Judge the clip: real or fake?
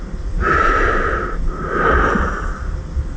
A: real